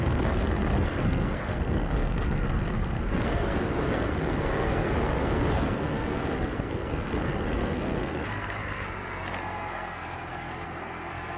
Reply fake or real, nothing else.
fake